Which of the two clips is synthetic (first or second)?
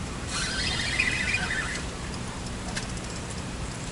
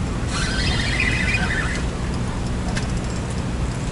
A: first